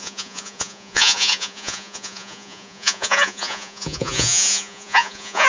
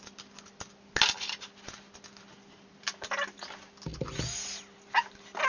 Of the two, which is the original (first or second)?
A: second